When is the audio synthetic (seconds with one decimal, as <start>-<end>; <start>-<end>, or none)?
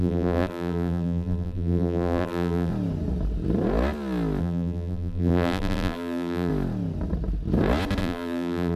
0.0-2.7; 4.4-6.5; 8.0-8.8